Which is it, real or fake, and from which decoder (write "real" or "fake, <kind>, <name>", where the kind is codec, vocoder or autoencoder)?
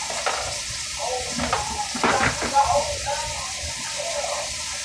fake, vocoder, BigVGAN v2